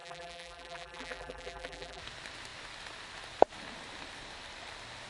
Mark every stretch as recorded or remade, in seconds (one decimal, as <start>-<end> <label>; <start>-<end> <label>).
0.0-2.0 remade; 2.0-5.1 recorded